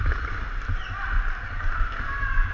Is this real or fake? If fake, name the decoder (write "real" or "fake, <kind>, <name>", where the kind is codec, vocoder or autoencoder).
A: real